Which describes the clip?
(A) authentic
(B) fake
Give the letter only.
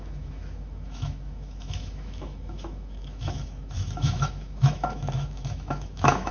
B